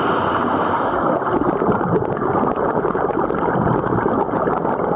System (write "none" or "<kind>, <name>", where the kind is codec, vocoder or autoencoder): none